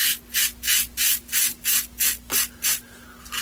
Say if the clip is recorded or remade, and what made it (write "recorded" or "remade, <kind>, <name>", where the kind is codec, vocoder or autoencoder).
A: recorded